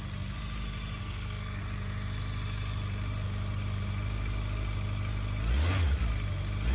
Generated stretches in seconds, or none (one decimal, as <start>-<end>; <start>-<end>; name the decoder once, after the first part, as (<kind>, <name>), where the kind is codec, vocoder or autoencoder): 1.0-1.6 (codec, SNAC)